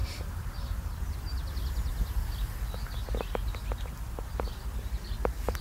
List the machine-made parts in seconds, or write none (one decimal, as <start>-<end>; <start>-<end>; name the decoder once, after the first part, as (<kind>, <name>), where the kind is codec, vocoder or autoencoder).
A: 0.0-1.0 (vocoder, BigVGAN v2)